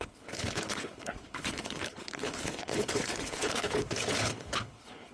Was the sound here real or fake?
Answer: fake